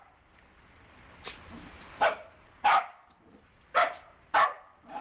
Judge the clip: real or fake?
real